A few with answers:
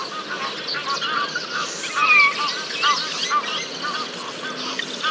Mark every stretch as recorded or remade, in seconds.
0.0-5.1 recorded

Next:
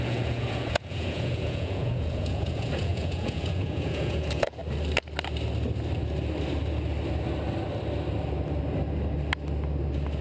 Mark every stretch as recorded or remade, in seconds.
0.0-4.6 remade; 4.6-10.2 recorded

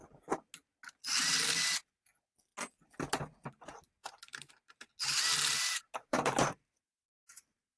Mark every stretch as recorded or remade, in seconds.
0.0-4.0 recorded; 4.0-4.5 remade; 4.5-6.0 recorded; 6.0-7.8 remade

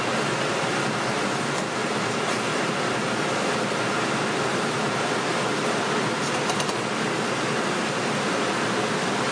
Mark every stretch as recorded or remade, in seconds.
0.0-1.8 recorded; 1.8-2.4 remade; 2.4-4.5 recorded; 4.5-5.0 remade; 5.0-9.3 recorded

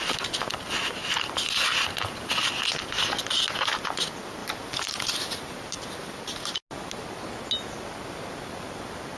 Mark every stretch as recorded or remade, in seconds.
0.0-9.2 recorded

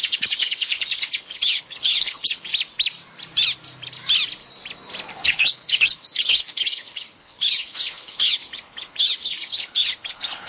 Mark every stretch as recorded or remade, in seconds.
0.0-2.5 remade; 2.5-5.1 recorded; 5.1-10.5 remade